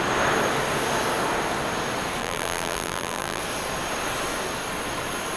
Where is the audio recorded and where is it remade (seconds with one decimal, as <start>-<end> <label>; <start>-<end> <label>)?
0.0-2.2 recorded; 2.2-3.4 remade; 3.4-5.4 recorded